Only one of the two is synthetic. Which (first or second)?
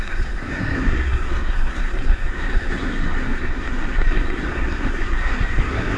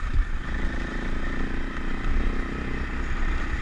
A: first